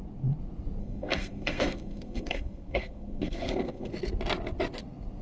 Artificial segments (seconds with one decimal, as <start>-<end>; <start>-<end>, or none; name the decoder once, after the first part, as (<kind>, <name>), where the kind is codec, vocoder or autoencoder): 0.8-3.9 (codec, SNAC)